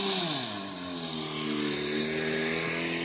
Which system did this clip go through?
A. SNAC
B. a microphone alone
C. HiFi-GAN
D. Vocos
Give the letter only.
B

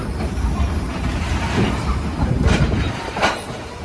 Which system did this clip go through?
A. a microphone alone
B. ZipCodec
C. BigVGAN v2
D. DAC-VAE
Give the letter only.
C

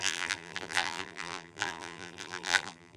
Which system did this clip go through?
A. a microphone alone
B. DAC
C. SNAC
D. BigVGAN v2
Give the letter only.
D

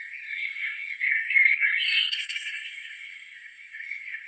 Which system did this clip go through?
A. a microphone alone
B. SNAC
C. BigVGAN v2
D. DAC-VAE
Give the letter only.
B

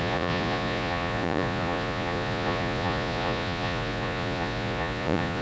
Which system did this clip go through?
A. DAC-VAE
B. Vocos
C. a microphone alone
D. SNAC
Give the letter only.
B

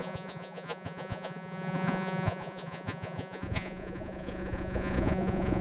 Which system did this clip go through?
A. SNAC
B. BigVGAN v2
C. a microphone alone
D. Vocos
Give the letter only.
D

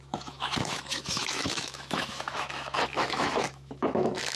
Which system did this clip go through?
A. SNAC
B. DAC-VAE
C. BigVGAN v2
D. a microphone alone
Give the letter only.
B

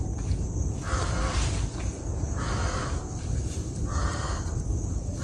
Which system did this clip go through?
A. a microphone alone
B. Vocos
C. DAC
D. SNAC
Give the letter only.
A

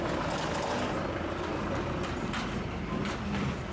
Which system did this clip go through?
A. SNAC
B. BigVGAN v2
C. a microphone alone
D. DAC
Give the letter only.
C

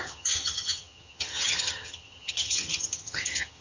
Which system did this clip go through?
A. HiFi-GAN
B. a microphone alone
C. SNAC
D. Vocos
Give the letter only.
A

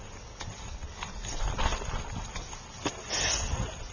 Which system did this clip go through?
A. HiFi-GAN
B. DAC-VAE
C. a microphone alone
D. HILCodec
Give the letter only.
C